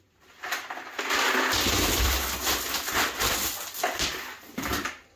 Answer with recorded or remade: recorded